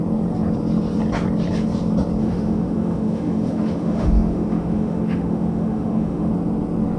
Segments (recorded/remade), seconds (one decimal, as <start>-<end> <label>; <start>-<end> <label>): 0.0-2.2 recorded; 2.2-6.3 remade; 6.3-7.0 recorded